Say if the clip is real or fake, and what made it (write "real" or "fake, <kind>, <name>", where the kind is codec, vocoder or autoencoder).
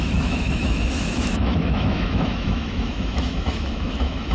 fake, autoencoder, DAC-VAE